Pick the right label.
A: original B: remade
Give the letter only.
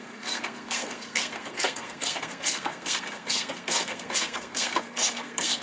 B